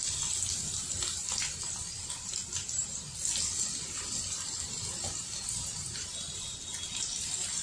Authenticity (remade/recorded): recorded